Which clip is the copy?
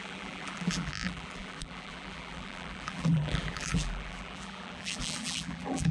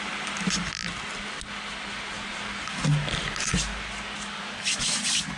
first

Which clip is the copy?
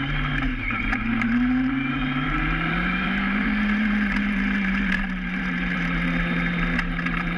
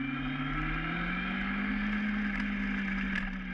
first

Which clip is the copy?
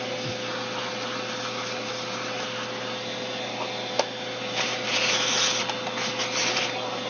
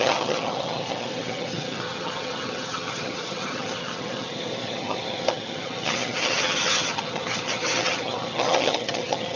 second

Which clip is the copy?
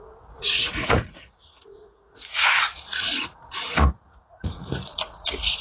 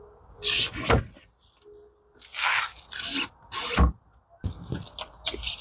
first